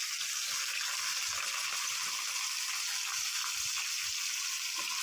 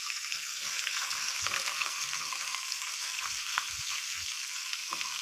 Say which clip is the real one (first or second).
first